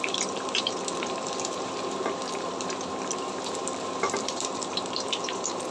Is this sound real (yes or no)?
no